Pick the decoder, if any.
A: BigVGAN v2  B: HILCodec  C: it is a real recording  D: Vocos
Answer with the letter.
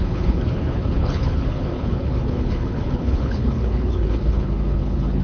B